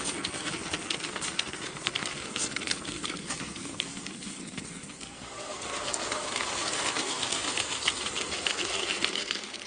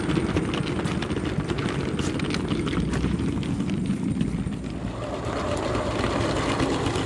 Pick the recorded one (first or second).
second